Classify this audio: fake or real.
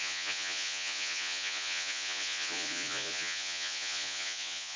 fake